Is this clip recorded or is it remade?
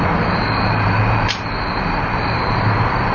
remade